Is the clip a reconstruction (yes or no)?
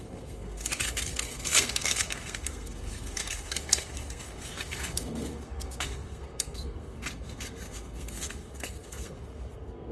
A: yes